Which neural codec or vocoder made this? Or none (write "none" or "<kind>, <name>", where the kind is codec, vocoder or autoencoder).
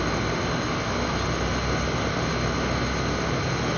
none